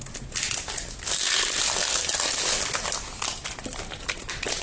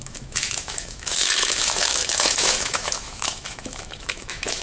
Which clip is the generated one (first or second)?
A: second